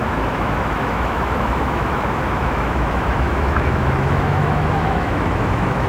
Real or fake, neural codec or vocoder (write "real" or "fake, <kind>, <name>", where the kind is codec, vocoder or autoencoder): fake, autoencoder, DAC-VAE